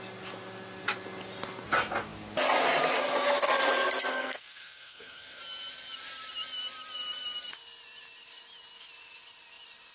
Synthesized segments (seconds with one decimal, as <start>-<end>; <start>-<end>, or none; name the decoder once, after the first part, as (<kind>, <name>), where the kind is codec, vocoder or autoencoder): 4.1-5.4 (codec, SNAC)